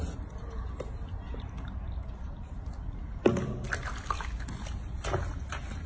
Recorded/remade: recorded